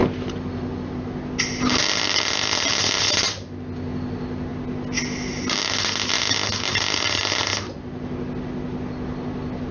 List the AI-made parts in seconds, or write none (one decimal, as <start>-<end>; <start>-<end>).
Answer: none